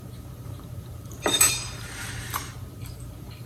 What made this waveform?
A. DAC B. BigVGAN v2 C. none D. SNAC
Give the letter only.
B